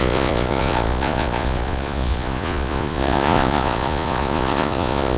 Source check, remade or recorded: remade